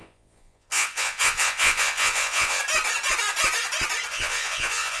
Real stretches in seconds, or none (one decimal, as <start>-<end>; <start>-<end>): 2.6-4.1